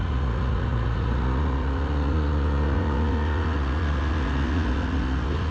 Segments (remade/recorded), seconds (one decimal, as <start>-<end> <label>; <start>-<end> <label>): 0.0-5.5 remade